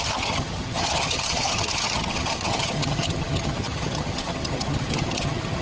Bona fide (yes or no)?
no